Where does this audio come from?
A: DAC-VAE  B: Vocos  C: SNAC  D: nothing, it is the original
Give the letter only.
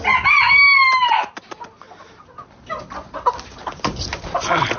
D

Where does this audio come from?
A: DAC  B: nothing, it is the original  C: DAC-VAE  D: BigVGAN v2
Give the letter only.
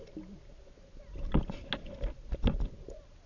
B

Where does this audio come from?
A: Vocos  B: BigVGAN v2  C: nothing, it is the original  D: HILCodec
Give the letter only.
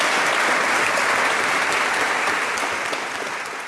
C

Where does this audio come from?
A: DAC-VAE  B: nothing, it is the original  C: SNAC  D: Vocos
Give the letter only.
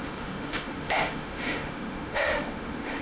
A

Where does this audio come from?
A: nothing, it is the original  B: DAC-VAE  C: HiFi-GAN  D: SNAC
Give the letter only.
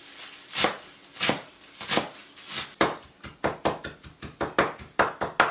A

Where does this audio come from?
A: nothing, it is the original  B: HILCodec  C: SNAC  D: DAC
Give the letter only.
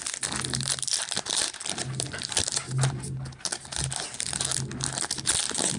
A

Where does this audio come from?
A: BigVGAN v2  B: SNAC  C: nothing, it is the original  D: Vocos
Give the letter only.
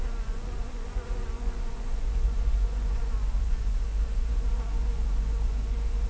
D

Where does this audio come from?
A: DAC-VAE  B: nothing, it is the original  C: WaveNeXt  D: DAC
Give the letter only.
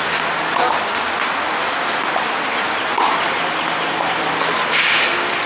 B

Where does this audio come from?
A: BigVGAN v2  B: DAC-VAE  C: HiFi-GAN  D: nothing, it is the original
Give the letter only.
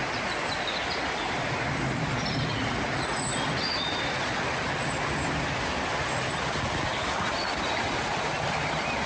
D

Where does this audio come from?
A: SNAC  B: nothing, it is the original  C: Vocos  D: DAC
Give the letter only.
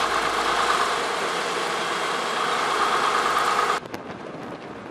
B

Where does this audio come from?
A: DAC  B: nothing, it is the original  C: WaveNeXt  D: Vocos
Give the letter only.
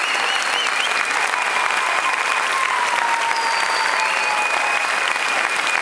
B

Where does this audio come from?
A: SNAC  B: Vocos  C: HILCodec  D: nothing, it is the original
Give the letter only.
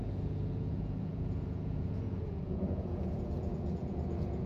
B